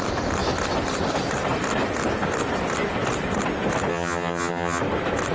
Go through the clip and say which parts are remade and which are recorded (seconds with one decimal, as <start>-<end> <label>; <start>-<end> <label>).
0.0-3.9 recorded; 3.9-4.8 remade; 4.8-5.3 recorded